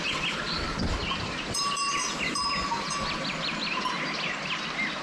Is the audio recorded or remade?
remade